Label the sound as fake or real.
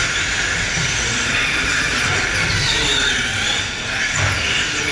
real